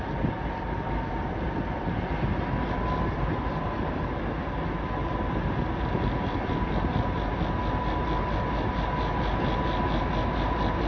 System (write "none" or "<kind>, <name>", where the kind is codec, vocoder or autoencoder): none